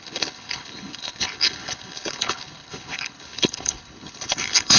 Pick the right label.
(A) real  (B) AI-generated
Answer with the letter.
B